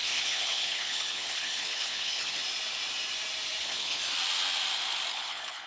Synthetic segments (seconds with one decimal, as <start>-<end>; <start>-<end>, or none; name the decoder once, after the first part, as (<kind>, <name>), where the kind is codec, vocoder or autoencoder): 0.0-2.4 (codec, HILCodec); 3.6-4.0; 5.1-5.7